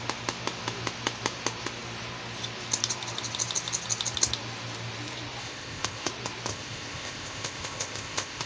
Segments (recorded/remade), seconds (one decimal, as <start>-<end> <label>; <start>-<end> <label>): 0.0-5.4 recorded; 5.4-6.1 remade; 6.1-6.5 recorded; 6.5-8.5 remade